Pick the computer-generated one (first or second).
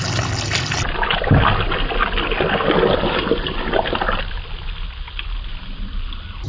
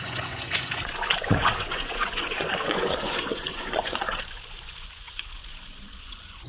second